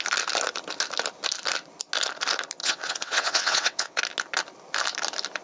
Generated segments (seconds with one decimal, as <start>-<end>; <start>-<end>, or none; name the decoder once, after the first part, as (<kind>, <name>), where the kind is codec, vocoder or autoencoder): 2.6-4.0 (vocoder, WaveNeXt)

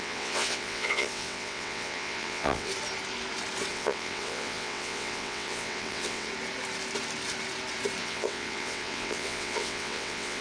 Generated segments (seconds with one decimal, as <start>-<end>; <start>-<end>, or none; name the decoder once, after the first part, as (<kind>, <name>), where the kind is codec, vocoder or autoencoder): 0.0-2.7 (vocoder, WaveNeXt); 3.7-6.3; 8.0-10.4

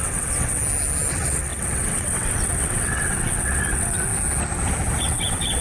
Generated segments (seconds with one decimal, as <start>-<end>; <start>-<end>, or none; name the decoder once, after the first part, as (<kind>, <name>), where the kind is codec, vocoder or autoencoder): 0.0-0.6 (vocoder, WaveNeXt); 1.1-4.1; 5.0-5.6

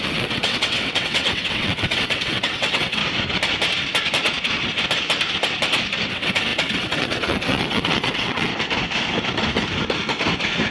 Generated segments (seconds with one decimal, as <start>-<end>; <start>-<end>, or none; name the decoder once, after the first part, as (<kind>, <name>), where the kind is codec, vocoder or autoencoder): 0.0-3.0 (vocoder, WaveNeXt); 6.1-8.5

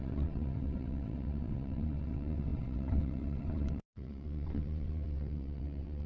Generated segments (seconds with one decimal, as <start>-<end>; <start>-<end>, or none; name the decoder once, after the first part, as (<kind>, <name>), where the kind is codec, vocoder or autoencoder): 0.0-6.1 (vocoder, WaveNeXt)